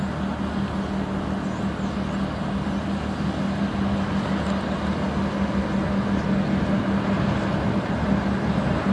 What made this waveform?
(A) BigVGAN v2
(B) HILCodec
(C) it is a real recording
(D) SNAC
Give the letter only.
C